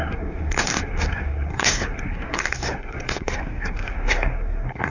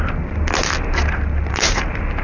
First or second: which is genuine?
second